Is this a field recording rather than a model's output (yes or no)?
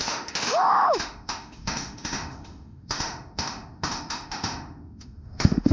no